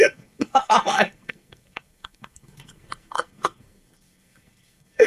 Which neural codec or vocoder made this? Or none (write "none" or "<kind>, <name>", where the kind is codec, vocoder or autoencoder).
codec, SNAC